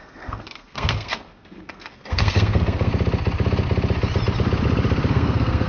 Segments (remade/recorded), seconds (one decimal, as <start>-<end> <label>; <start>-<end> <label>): 0.0-2.9 remade; 2.9-5.1 recorded; 5.1-5.7 remade